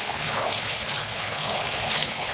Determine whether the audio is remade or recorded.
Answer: remade